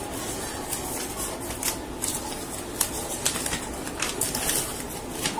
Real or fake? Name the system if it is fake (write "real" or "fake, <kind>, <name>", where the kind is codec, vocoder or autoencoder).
real